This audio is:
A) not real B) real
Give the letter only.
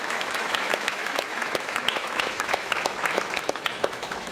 A